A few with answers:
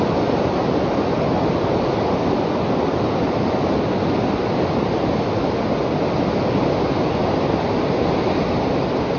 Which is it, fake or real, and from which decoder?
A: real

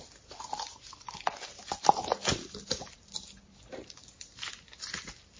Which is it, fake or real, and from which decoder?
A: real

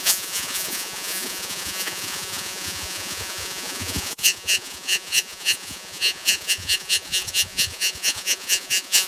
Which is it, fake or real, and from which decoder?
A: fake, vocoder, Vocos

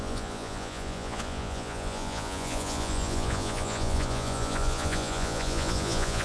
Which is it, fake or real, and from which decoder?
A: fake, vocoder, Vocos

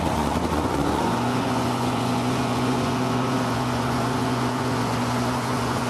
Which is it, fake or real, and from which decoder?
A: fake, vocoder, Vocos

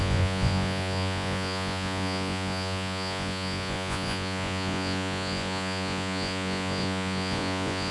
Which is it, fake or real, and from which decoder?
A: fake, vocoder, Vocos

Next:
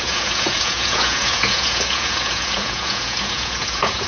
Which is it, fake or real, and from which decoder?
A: fake, vocoder, Vocos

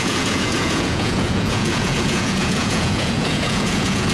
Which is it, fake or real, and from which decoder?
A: fake, vocoder, Vocos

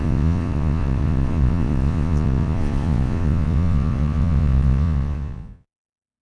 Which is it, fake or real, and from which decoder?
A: fake, vocoder, Vocos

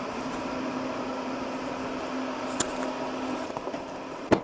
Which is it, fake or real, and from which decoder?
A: real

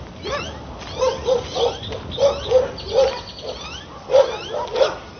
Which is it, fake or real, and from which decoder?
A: real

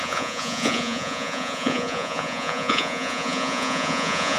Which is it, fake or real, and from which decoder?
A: fake, vocoder, Vocos